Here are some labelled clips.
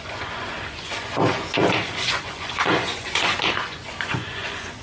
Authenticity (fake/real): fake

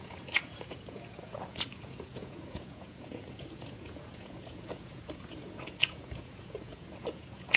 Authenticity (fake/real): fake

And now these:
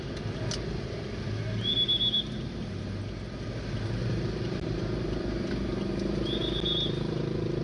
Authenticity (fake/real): real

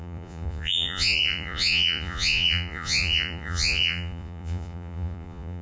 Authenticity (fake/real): fake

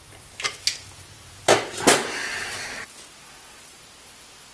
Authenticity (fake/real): real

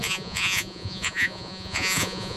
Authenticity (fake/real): fake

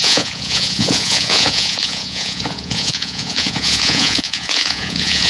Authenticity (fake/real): fake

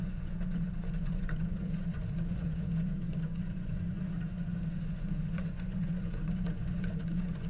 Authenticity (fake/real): fake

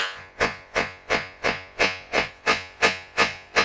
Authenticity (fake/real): fake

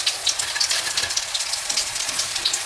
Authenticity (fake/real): fake